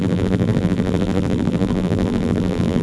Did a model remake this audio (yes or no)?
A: yes